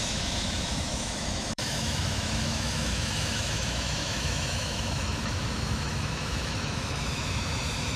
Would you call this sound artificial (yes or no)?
yes